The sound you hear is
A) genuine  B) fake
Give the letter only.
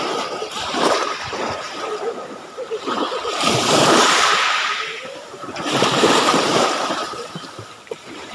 B